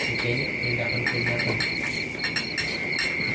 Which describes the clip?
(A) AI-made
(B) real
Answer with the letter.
B